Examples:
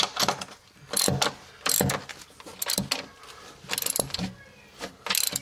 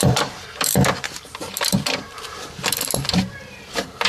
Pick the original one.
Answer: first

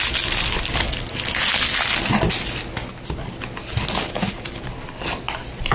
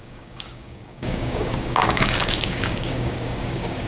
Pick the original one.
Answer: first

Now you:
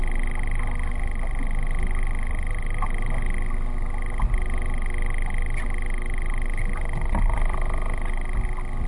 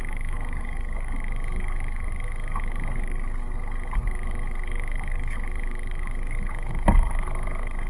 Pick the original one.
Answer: first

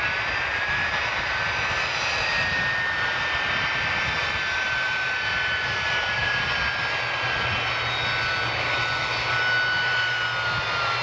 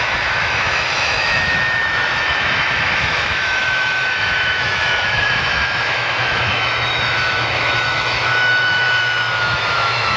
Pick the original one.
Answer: first